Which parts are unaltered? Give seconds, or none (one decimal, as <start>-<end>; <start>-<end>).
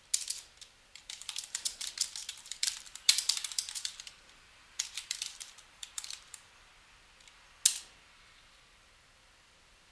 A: 0.0-0.9; 1.9-2.3; 6.7-9.9